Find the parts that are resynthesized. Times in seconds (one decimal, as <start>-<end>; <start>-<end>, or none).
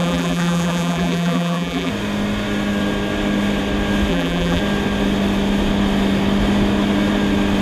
0.0-1.9; 4.1-4.6